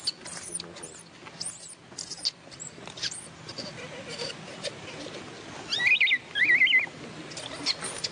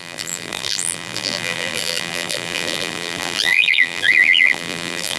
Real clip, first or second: first